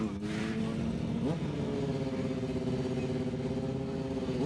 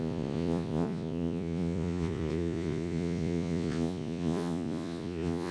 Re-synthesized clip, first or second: second